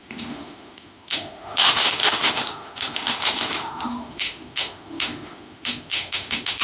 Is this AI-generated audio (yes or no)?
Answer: yes